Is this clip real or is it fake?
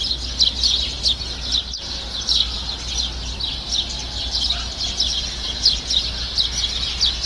real